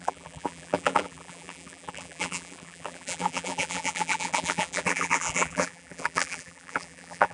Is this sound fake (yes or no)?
yes